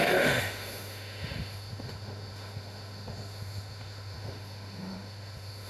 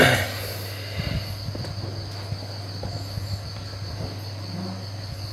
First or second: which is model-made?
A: first